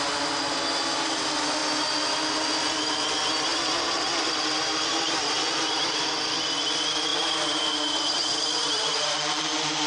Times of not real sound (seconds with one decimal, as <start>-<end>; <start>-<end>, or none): 3.5-6.3; 7.1-9.4